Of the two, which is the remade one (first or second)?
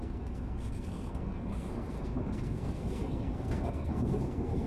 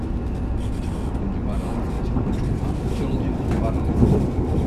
first